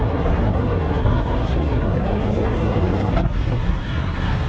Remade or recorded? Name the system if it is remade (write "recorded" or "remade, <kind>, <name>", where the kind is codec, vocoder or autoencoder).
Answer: remade, codec, SNAC